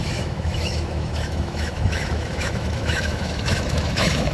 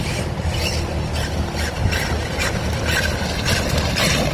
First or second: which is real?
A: second